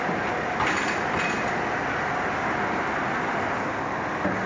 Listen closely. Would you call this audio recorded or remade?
recorded